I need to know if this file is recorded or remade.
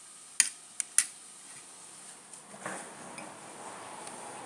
recorded